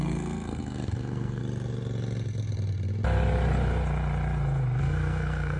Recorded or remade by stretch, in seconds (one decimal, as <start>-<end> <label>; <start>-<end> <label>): 0.0-1.4 remade; 1.4-4.8 recorded; 4.8-5.6 remade